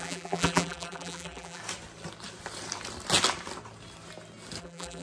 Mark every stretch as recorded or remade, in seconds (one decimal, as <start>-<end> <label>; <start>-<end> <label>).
0.0-1.6 remade; 1.6-4.6 recorded; 4.6-5.0 remade